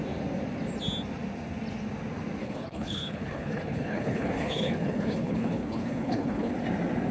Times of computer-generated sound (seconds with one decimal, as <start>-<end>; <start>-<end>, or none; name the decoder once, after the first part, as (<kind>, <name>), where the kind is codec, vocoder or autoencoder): 2.4-6.5 (codec, HILCodec)